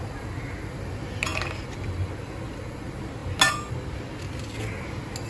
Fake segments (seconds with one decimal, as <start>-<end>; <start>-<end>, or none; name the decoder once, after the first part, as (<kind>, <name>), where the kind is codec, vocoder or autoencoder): none